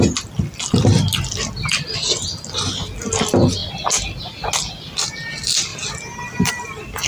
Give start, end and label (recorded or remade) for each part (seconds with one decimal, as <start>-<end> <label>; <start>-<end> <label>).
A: 0.0-7.1 recorded

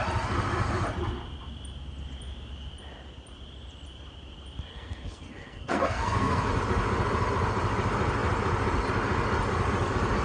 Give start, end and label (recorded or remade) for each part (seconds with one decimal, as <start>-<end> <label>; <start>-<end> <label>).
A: 0.0-4.7 recorded; 4.7-6.5 remade; 6.5-10.2 recorded

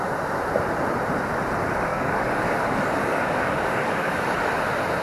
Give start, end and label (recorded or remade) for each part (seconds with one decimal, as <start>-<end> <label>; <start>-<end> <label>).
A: 0.0-1.9 recorded; 1.9-4.6 remade; 4.6-5.0 recorded

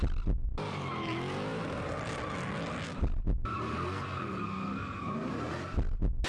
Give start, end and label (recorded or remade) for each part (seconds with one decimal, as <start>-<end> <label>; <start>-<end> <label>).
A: 0.0-3.7 recorded; 3.7-5.1 remade; 5.1-6.3 recorded

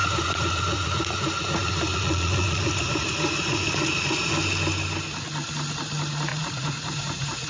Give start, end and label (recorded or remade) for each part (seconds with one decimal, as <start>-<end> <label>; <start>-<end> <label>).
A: 0.0-4.3 remade; 4.3-6.3 recorded; 6.3-7.5 remade

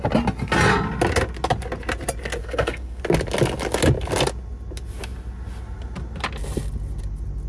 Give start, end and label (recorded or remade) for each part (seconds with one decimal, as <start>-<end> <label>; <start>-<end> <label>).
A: 0.0-2.4 recorded; 2.4-3.0 remade; 3.0-7.5 recorded

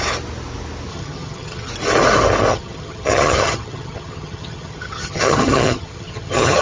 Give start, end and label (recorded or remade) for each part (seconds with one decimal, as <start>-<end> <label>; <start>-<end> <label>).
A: 0.0-0.9 recorded; 0.9-1.7 remade; 1.7-2.5 recorded; 2.5-6.6 remade